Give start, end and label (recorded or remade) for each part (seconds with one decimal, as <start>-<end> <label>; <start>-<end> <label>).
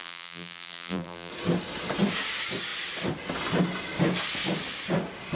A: 0.0-1.3 remade; 1.3-5.4 recorded